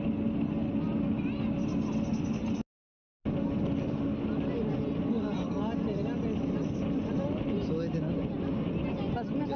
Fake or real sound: real